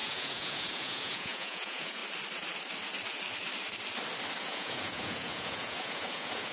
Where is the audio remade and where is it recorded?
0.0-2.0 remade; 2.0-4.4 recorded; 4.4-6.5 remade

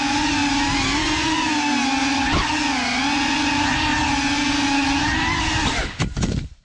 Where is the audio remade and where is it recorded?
0.0-0.4 remade; 0.4-1.0 recorded; 1.0-1.5 remade; 1.5-3.1 recorded; 3.1-3.9 remade; 3.9-6.6 recorded

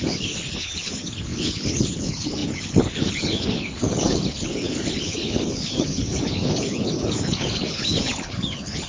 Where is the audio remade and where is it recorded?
0.0-8.9 remade